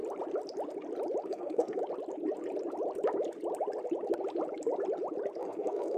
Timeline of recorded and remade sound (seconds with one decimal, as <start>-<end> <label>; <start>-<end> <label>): 0.0-1.3 recorded; 1.3-1.8 remade; 1.8-5.4 recorded; 5.4-6.0 remade